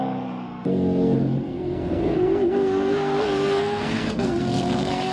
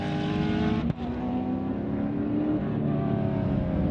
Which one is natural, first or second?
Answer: second